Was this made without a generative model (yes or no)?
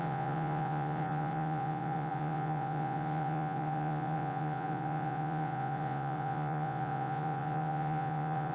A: no